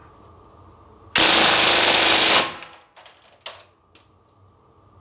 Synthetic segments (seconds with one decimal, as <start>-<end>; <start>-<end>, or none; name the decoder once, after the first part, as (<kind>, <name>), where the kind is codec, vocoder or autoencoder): none